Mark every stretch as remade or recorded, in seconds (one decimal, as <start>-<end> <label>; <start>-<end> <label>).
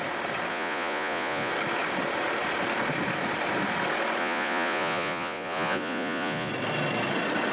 0.0-0.5 recorded; 0.5-1.5 remade; 1.5-4.2 recorded; 4.2-6.5 remade; 6.5-7.5 recorded